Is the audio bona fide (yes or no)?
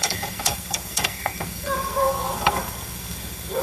no